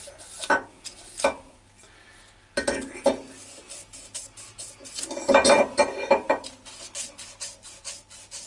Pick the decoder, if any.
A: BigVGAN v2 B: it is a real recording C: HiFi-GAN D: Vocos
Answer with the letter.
B